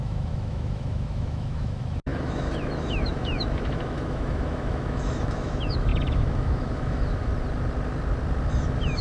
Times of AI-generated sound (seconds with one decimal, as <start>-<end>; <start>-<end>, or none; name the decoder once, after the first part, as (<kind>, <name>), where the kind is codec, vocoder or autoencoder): 0.0-7.3 (autoencoder, DAC-VAE); 8.5-9.0